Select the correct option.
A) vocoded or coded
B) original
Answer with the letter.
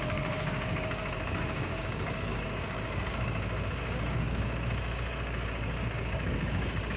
A